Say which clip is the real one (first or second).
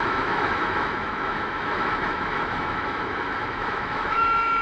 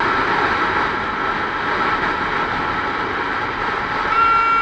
second